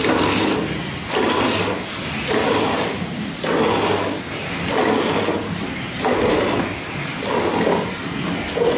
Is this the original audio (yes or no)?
yes